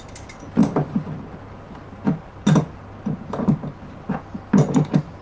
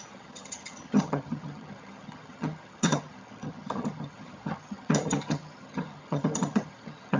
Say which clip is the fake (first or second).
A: second